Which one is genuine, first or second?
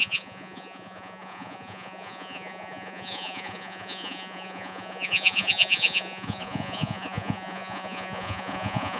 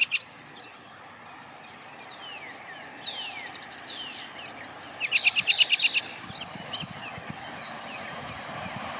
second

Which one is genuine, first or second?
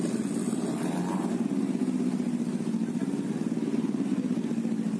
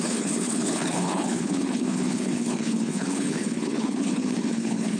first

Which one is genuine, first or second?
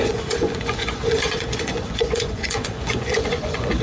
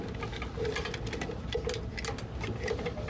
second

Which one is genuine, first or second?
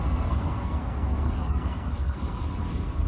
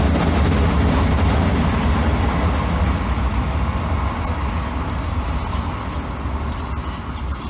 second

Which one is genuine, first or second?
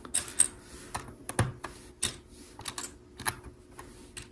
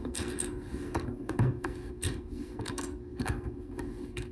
first